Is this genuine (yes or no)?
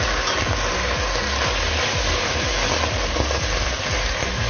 yes